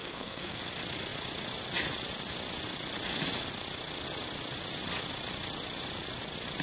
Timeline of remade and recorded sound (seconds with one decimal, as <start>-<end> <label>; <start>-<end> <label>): 0.0-0.6 remade; 0.6-6.6 recorded